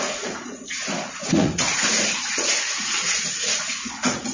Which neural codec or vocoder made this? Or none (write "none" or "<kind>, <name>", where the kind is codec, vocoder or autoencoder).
vocoder, Vocos